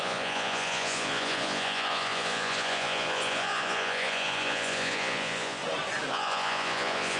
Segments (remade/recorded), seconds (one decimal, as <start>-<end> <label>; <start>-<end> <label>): 0.0-5.6 remade; 5.6-6.1 recorded; 6.1-7.2 remade